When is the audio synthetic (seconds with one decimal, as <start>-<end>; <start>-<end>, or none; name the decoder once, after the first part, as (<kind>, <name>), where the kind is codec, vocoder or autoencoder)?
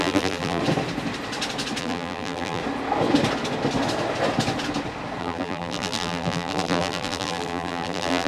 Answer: 0.0-0.6 (vocoder, BigVGAN v2); 1.8-2.6; 5.2-8.3